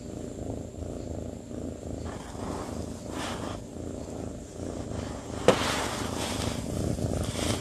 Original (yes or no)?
yes